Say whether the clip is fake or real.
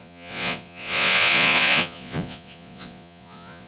fake